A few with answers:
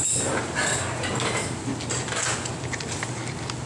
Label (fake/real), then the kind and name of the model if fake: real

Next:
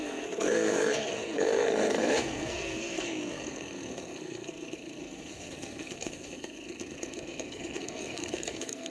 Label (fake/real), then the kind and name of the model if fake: fake, codec, SNAC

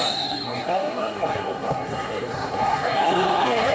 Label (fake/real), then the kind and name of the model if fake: fake, codec, SNAC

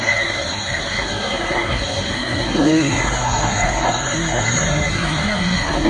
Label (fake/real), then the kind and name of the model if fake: fake, codec, SNAC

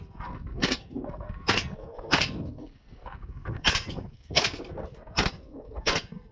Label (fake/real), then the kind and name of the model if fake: fake, codec, SNAC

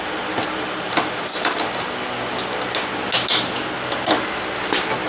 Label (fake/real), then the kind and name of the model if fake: real